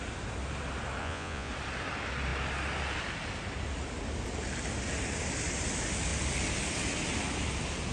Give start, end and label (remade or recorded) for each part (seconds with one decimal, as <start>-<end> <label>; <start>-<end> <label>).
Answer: 0.0-1.0 recorded; 1.0-1.5 remade; 1.5-7.9 recorded